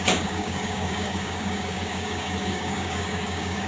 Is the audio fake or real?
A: fake